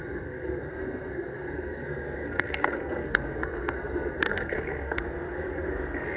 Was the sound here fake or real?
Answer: fake